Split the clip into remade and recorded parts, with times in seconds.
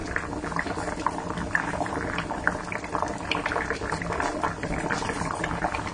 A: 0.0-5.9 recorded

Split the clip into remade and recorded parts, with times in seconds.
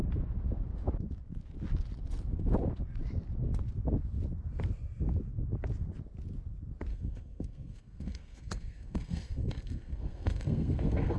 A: 0.0-6.9 recorded; 6.9-11.2 remade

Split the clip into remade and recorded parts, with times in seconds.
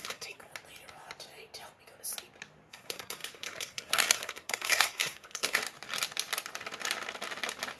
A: 0.0-0.5 remade; 0.5-2.7 recorded; 2.7-5.6 remade; 5.6-7.8 recorded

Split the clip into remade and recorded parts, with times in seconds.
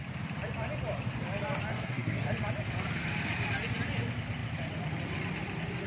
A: 0.0-1.7 recorded; 1.7-2.3 remade; 2.3-5.9 recorded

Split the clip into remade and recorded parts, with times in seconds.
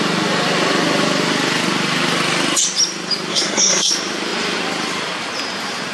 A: 0.0-3.3 recorded; 3.3-3.9 remade; 3.9-5.9 recorded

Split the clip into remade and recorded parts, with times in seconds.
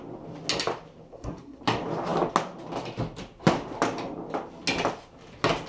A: 0.0-1.1 recorded; 1.1-1.6 remade; 1.6-5.7 recorded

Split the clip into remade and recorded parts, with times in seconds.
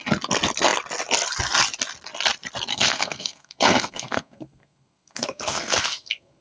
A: 0.0-2.7 recorded; 2.7-6.4 remade